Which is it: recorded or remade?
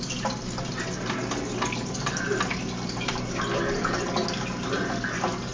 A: recorded